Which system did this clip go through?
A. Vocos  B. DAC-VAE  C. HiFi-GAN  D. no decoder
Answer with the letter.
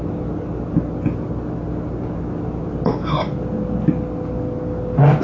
D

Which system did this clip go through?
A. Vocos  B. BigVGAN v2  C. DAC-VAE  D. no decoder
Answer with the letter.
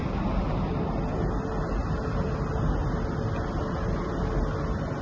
D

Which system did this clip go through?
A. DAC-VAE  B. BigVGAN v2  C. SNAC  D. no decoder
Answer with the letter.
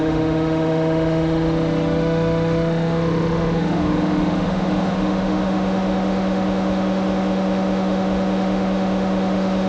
A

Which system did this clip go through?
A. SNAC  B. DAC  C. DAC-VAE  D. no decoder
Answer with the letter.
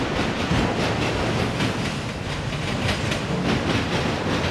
D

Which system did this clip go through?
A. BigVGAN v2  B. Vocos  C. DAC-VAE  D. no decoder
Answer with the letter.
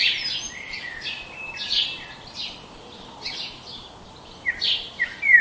D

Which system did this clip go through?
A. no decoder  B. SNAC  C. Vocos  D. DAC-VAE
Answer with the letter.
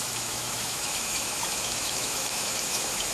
D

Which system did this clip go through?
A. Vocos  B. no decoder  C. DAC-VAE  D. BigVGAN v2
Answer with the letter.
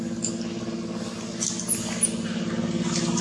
B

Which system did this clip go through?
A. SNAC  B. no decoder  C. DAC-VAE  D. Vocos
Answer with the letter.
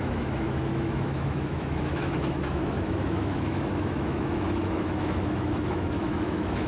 C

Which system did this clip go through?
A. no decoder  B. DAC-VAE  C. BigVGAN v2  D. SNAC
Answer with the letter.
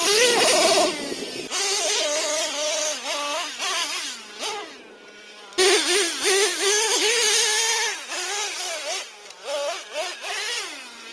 A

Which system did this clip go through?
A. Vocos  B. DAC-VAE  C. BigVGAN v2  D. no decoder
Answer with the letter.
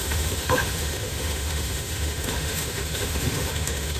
B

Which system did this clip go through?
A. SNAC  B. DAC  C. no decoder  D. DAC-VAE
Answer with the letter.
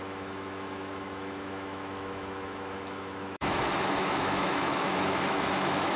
D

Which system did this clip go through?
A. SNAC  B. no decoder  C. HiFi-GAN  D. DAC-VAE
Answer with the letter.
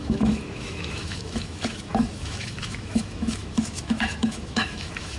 D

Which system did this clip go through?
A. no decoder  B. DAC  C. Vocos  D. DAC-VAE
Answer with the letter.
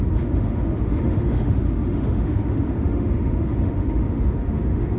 D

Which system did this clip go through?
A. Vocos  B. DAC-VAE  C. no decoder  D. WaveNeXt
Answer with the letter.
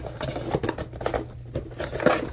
C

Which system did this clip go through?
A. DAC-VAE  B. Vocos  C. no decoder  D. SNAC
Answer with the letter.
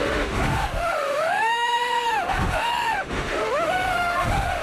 A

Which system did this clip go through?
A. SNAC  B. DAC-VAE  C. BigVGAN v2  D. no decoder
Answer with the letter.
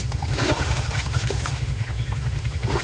B